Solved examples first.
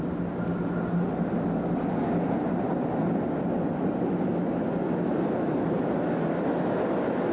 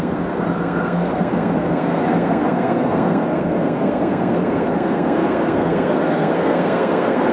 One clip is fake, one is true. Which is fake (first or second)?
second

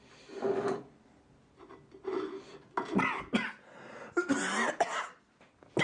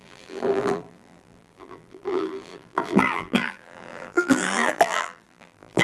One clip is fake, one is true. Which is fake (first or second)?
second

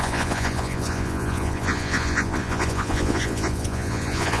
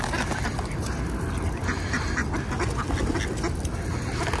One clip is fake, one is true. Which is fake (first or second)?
first